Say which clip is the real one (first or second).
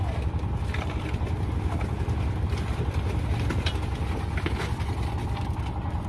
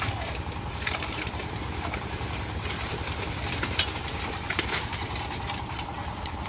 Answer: first